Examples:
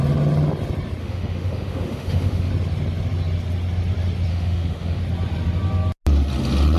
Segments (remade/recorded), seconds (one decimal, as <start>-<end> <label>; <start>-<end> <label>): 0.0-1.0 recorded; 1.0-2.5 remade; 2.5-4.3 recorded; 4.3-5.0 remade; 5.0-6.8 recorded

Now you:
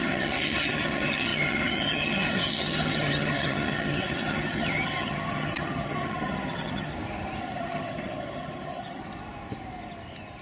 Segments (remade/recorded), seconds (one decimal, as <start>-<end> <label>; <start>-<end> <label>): 0.0-6.9 remade; 6.9-7.4 recorded; 7.4-9.0 remade; 9.0-10.4 recorded

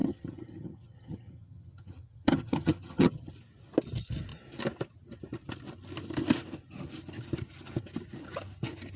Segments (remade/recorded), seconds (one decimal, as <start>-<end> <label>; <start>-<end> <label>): 0.0-3.3 remade; 3.3-9.0 recorded

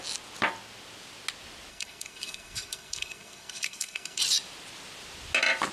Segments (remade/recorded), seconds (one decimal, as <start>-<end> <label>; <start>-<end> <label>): 0.0-1.7 recorded; 1.7-4.2 remade; 4.2-5.7 recorded

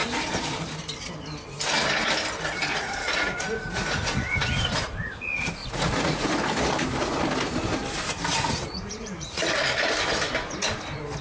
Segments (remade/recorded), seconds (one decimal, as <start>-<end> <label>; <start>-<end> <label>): 0.0-2.7 recorded; 2.7-4.5 remade; 4.5-5.6 recorded; 5.6-6.3 remade; 6.3-8.7 recorded; 8.7-9.5 remade; 9.5-11.2 recorded

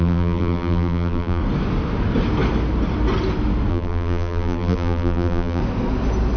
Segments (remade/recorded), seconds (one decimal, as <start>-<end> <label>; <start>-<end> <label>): 0.0-1.4 remade; 1.4-3.7 recorded; 3.7-5.6 remade; 5.6-6.4 recorded

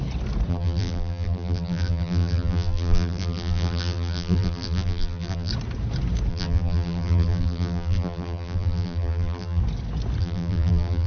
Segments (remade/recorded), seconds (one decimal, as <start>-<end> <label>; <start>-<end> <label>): 0.0-0.5 recorded; 0.5-5.5 remade; 5.5-6.3 recorded; 6.3-9.6 remade; 9.6-10.2 recorded; 10.2-11.1 remade

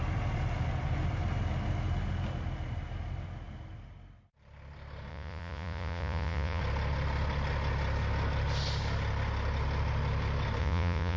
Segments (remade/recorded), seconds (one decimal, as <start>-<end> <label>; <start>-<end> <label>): 0.0-5.1 recorded; 5.1-6.6 remade; 6.6-10.6 recorded; 10.6-11.2 remade